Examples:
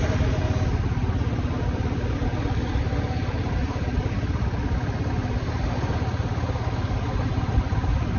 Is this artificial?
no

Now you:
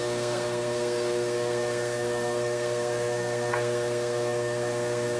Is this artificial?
yes